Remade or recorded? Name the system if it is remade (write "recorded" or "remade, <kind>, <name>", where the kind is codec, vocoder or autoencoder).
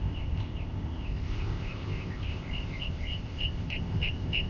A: remade, codec, ZipCodec